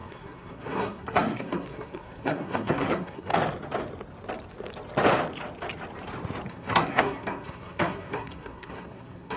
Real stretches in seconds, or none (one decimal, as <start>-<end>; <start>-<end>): 3.3-6.5